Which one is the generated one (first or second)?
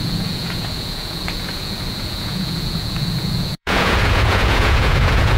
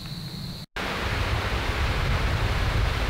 first